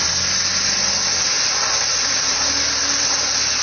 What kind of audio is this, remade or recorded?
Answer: recorded